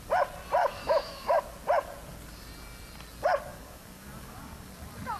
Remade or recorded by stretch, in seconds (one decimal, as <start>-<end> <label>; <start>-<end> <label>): 0.0-0.6 recorded; 0.6-1.4 remade; 1.4-3.5 recorded; 3.5-4.7 remade; 4.7-5.2 recorded

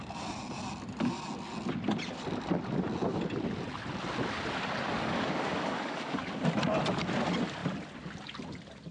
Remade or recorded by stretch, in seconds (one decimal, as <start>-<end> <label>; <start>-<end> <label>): 0.0-5.0 recorded; 5.0-6.4 remade; 6.4-8.9 recorded

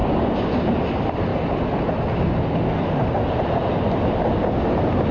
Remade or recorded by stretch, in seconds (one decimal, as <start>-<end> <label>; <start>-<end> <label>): 0.0-0.5 remade; 0.5-5.1 recorded

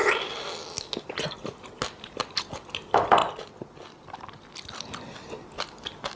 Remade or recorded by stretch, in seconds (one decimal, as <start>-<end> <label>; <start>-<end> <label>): 0.0-6.2 recorded

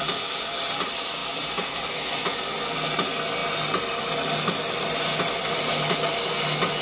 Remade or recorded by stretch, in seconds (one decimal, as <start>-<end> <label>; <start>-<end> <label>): 0.0-6.8 recorded

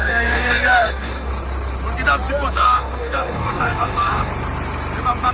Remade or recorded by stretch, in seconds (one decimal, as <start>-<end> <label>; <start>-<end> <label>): 0.0-1.3 remade; 1.3-2.5 recorded; 2.5-4.3 remade; 4.3-5.3 recorded

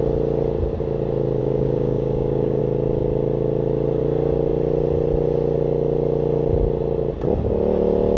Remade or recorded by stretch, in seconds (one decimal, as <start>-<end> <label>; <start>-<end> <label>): 0.0-1.4 recorded; 1.4-2.6 remade; 2.6-8.2 recorded

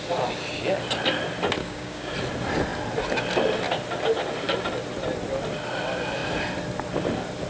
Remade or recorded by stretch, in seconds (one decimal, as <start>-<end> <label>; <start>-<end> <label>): 0.0-1.6 recorded; 1.6-2.1 remade; 2.1-7.5 recorded